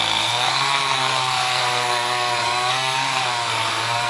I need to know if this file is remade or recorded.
remade